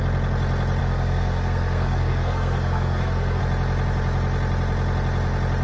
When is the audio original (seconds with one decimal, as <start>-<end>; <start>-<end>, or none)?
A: 0.0-0.8; 3.4-5.6